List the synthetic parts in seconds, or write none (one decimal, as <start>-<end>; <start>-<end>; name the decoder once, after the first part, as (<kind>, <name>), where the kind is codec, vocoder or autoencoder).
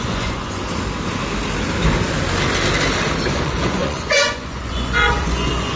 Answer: 0.0-0.6 (vocoder, Vocos); 3.3-5.8